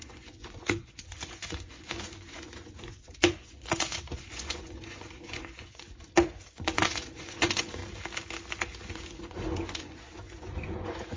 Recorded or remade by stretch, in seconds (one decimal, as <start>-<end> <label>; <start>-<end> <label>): 0.0-7.8 remade; 7.8-8.9 recorded; 8.9-11.2 remade